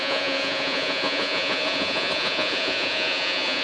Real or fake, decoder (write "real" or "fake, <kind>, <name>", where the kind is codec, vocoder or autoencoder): fake, vocoder, Vocos